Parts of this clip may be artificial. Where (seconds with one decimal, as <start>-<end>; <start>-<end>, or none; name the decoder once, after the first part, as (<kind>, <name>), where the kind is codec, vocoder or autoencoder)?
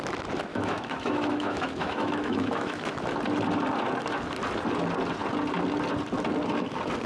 0.5-3.0 (autoencoder, DAC-VAE)